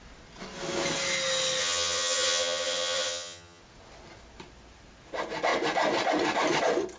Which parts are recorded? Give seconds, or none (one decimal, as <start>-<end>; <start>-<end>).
0.0-1.6; 3.6-7.0